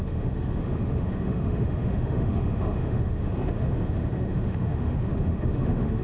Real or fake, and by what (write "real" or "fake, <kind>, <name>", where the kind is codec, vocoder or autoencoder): fake, autoencoder, DAC-VAE